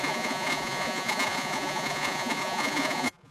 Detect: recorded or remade remade